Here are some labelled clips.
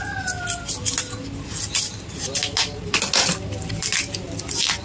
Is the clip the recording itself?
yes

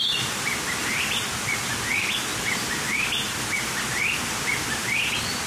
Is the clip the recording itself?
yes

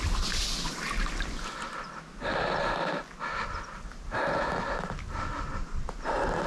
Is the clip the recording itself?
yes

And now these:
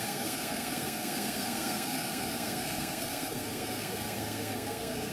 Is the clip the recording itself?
no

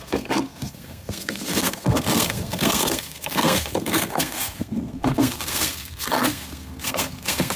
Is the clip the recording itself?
no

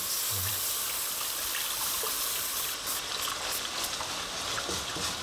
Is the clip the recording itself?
yes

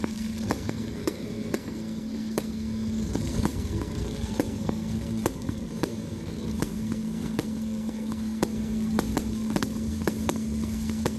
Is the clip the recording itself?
no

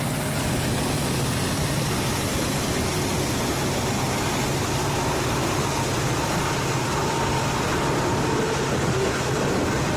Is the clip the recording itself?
yes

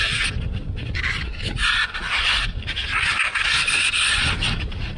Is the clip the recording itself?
yes